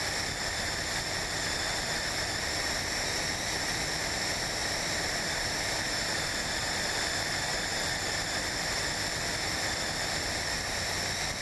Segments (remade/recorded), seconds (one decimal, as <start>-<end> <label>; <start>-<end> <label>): 0.0-4.6 recorded; 4.6-6.4 remade; 6.4-7.5 recorded; 7.5-9.0 remade; 9.0-11.4 recorded